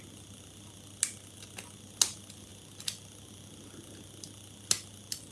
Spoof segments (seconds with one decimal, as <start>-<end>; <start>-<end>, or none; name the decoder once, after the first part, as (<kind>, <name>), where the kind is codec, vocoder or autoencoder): none